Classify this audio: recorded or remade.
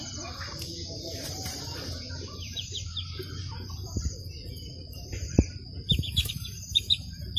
remade